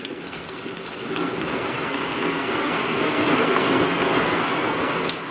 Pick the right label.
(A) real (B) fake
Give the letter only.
B